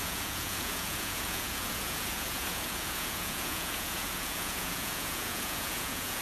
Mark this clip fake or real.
fake